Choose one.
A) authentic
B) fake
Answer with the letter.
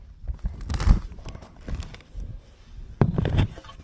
A